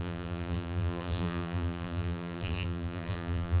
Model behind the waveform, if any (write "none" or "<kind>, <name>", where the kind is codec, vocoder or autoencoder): vocoder, BigVGAN v2